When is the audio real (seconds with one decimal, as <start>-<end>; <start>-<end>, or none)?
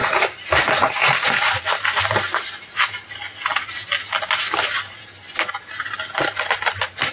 3.3-4.6